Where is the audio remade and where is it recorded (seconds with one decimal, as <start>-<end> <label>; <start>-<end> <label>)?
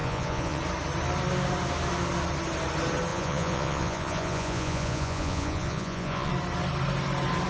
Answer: 0.0-0.6 remade; 0.6-3.1 recorded; 3.1-6.3 remade; 6.3-7.5 recorded